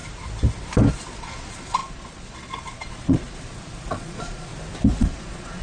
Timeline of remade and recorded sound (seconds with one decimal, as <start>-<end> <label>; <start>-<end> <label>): 0.0-0.9 recorded; 0.9-4.5 remade; 4.5-5.0 recorded; 5.0-5.6 remade